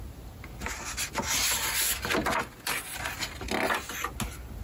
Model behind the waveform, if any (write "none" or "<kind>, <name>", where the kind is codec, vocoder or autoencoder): none